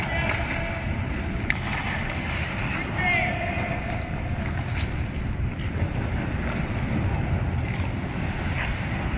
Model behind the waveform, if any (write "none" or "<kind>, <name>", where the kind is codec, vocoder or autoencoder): none